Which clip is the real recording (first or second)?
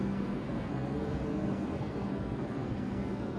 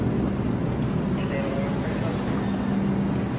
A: second